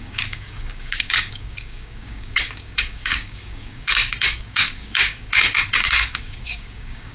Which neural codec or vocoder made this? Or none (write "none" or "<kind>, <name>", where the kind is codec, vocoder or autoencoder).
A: codec, DAC